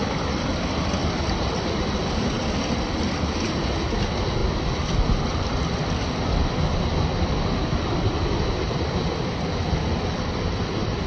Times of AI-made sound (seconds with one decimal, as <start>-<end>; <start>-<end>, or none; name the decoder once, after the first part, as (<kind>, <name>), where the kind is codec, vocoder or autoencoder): none

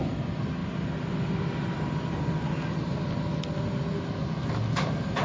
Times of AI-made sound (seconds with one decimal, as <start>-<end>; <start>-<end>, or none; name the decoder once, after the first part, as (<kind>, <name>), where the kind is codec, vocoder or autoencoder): none

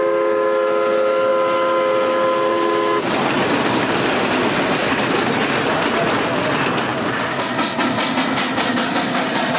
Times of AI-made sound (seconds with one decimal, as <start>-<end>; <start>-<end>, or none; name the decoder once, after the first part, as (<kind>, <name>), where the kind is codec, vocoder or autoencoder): none

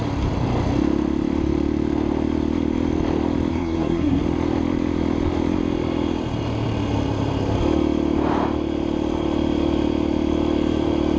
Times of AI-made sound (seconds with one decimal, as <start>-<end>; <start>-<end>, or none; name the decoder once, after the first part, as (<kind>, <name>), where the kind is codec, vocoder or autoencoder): 3.5-4.2 (codec, SNAC)

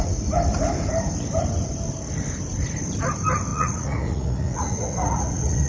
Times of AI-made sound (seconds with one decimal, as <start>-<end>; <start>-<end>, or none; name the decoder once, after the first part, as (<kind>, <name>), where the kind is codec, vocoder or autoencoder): 3.5-5.7 (vocoder, Vocos)

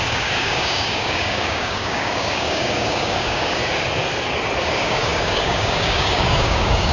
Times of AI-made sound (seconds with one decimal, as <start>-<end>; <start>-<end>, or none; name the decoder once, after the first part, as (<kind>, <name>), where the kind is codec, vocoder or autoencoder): 0.0-3.6 (codec, DAC); 4.6-6.9